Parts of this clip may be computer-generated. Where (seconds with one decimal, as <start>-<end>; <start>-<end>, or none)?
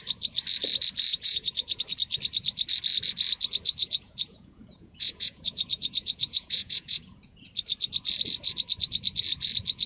1.1-1.8; 3.8-7.5